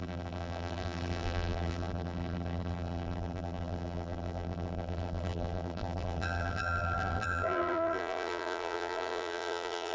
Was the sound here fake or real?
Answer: fake